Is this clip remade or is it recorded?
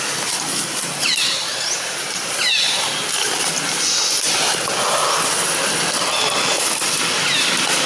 recorded